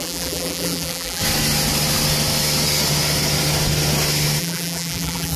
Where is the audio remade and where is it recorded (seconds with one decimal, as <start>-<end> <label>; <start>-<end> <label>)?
0.0-1.2 remade; 1.2-4.4 recorded; 4.4-5.4 remade